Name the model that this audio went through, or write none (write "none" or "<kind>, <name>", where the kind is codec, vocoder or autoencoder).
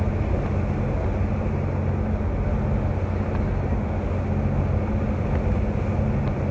none